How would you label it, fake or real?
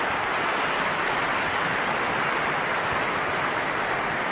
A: real